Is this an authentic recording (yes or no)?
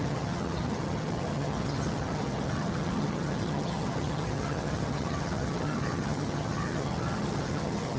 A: no